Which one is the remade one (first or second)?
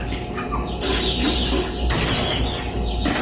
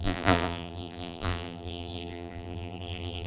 second